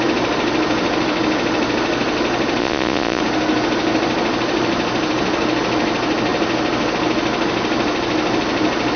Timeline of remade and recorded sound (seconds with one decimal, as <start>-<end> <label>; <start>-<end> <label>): 0.0-2.6 recorded; 2.6-3.2 remade; 3.2-9.0 recorded